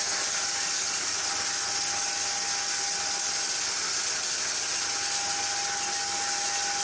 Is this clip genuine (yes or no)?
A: yes